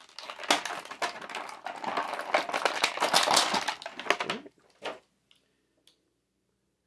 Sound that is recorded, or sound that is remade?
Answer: recorded